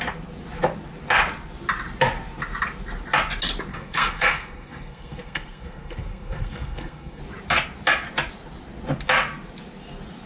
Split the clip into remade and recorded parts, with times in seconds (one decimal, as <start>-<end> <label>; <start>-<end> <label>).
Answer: 0.0-3.7 recorded; 3.7-7.2 remade; 7.2-10.3 recorded

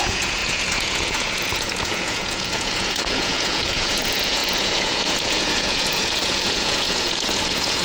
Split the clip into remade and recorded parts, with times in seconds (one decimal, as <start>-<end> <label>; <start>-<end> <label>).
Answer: 0.0-7.8 remade

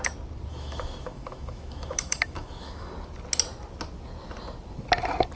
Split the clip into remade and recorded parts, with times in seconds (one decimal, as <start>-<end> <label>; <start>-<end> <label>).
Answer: 0.0-0.5 recorded; 0.5-2.9 remade; 2.9-5.4 recorded

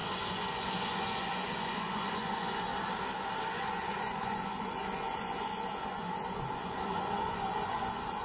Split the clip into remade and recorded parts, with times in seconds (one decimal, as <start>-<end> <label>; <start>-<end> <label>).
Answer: 0.0-2.7 remade; 2.7-3.5 recorded; 3.5-8.2 remade

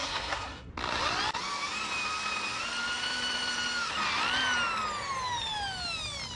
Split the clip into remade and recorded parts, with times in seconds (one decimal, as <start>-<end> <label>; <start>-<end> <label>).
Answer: 0.0-0.7 remade; 0.7-6.4 recorded